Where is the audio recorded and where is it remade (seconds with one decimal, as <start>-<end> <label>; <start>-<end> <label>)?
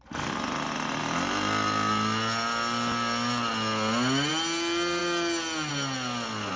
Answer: 0.0-6.6 recorded